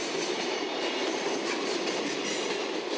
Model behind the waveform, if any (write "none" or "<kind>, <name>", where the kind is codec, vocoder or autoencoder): none